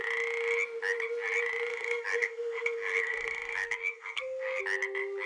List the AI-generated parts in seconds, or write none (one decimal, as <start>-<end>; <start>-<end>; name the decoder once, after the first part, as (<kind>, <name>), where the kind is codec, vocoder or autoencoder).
1.7-4.6 (codec, SNAC)